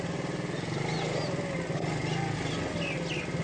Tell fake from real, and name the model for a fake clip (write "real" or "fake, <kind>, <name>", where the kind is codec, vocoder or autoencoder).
real